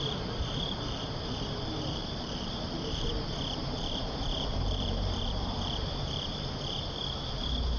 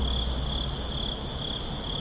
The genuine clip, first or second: second